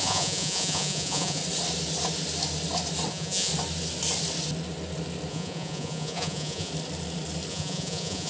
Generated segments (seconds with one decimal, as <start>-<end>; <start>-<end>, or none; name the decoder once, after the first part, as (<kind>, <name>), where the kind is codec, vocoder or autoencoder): 0.0-1.4 (vocoder, Vocos); 3.1-3.5; 5.3-6.7; 7.5-8.3